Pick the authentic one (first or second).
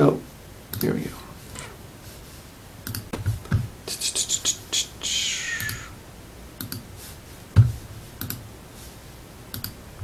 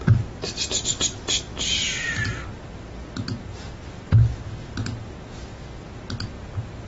second